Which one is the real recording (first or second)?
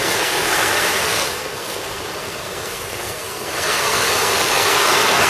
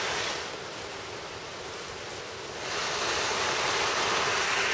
second